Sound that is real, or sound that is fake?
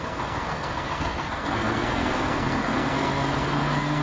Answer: fake